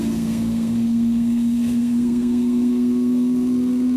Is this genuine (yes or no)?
no